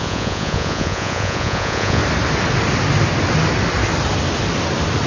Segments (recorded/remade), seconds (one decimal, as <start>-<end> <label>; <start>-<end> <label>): 0.0-2.0 remade; 2.0-5.1 recorded